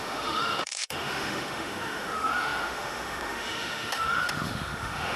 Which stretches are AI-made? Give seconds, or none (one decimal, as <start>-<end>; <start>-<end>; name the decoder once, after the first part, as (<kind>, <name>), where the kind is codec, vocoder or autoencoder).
0.0-5.2 (autoencoder, DAC-VAE)